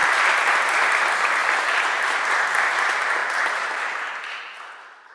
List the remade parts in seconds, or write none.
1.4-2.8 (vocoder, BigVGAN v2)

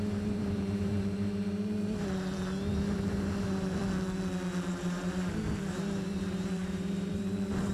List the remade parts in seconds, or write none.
0.0-3.8 (vocoder, BigVGAN v2); 4.7-7.7

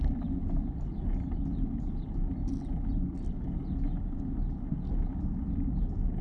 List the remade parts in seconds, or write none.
none

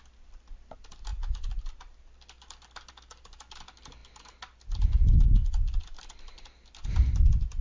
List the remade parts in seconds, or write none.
0.0-4.0 (vocoder, BigVGAN v2); 6.0-7.6

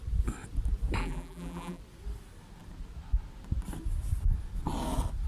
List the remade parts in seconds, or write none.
1.0-1.8 (vocoder, BigVGAN v2)